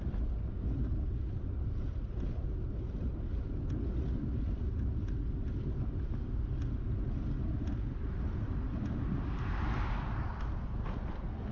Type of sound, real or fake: real